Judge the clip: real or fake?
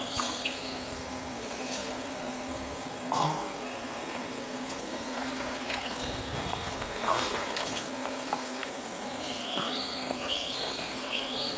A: fake